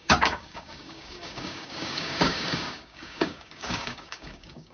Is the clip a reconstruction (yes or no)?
yes